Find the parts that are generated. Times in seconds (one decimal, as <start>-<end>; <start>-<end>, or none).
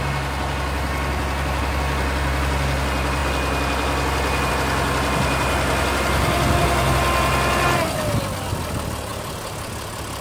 none